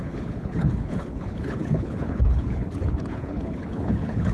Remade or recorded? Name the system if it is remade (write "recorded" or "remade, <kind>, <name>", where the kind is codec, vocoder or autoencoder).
remade, codec, HILCodec